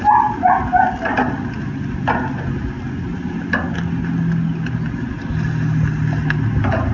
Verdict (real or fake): real